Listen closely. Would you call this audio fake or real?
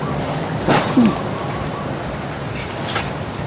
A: real